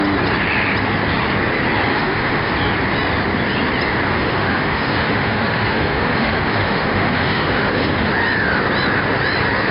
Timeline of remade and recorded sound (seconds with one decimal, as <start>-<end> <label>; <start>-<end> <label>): 0.0-1.9 recorded; 1.9-2.5 remade; 2.5-4.1 recorded; 4.1-8.1 remade; 8.1-9.7 recorded